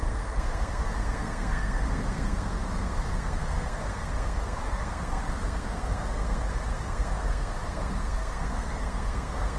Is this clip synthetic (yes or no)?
yes